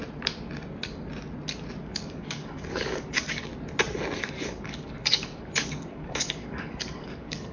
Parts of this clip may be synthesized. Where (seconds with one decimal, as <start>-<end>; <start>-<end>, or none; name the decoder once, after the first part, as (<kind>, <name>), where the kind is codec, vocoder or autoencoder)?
1.8-3.5 (codec, DAC); 4.2-7.5